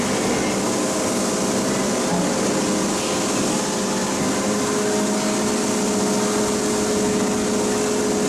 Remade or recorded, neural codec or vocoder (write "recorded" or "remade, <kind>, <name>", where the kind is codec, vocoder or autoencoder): recorded